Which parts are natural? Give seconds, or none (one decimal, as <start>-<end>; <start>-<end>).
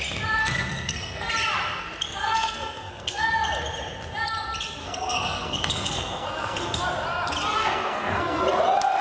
0.0-0.4; 1.3-1.8; 3.3-4.8; 6.8-7.6; 8.4-9.0